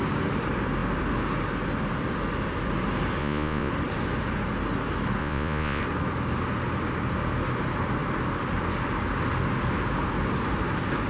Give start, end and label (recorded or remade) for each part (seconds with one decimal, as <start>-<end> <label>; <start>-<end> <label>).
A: 0.0-3.2 recorded; 3.2-3.7 remade; 3.7-5.2 recorded; 5.2-5.8 remade; 5.8-11.1 recorded